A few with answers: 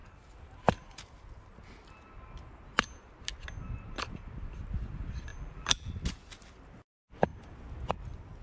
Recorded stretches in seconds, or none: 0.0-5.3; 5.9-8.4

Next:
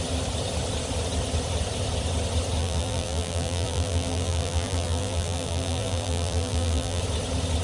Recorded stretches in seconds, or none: 0.0-2.6; 7.0-7.6

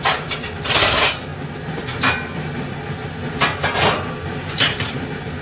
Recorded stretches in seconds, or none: 1.3-4.5

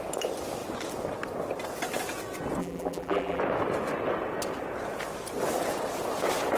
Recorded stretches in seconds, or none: 0.0-2.6; 3.4-6.6

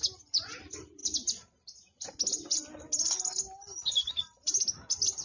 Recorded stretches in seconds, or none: 0.0-5.2

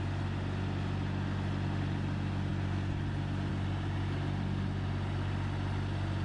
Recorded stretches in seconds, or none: 0.0-6.2